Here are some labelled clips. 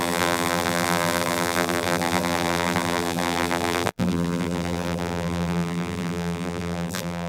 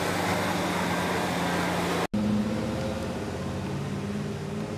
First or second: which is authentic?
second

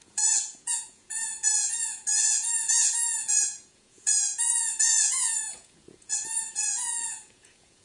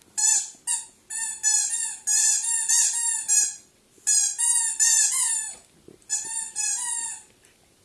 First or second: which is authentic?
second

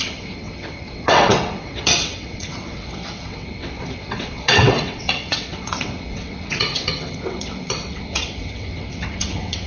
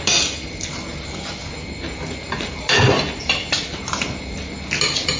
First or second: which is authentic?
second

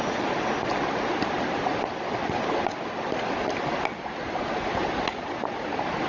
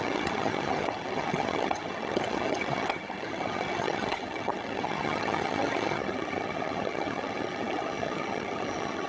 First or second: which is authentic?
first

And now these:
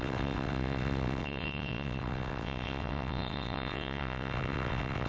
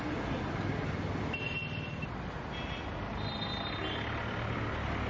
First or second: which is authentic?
second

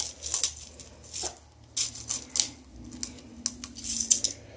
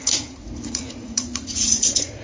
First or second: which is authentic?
first